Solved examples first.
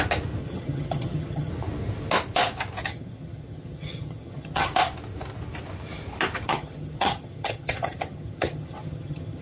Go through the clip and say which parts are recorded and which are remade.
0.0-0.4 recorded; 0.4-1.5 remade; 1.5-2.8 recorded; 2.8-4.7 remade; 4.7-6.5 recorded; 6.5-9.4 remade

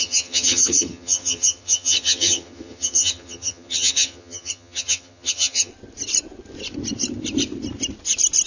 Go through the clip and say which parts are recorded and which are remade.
0.0-5.7 remade; 5.7-8.5 recorded